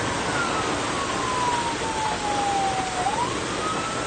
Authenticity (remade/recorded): recorded